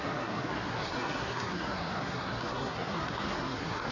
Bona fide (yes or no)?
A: no